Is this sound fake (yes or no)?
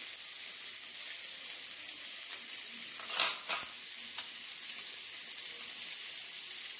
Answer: no